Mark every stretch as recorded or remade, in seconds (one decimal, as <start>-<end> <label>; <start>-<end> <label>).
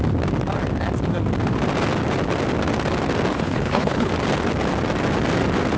0.0-3.3 recorded; 3.3-4.1 remade; 4.1-5.8 recorded